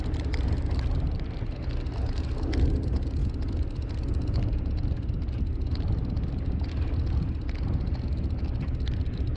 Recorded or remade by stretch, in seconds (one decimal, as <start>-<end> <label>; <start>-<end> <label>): 0.0-9.4 recorded

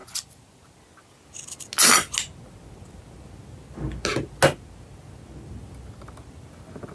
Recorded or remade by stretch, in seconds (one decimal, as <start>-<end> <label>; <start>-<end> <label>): 0.0-6.9 recorded

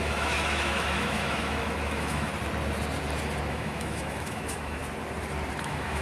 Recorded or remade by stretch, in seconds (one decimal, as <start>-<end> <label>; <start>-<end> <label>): 0.0-2.3 remade; 2.3-3.5 recorded; 3.5-4.8 remade; 4.8-5.6 recorded; 5.6-6.0 remade

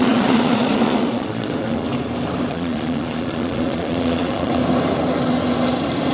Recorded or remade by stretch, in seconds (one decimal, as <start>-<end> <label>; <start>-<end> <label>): 0.0-1.9 remade; 1.9-2.5 recorded; 2.5-4.6 remade; 4.6-6.1 recorded

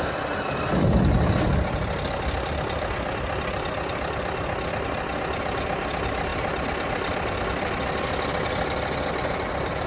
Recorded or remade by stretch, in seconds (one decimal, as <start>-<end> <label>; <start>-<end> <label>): 0.0-9.9 recorded

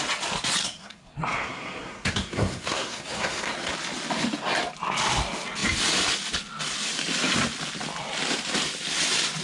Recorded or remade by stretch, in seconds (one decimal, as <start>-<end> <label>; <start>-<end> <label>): 0.0-0.6 recorded; 0.6-3.7 remade; 3.7-9.4 recorded